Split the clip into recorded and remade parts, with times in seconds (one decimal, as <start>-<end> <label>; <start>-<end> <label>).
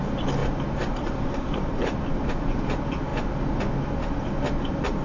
0.0-0.4 recorded; 0.4-2.0 remade; 2.0-5.0 recorded